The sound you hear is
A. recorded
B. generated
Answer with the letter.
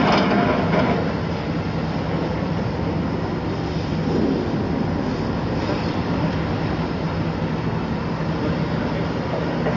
A